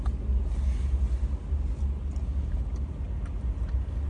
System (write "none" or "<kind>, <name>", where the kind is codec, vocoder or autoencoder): none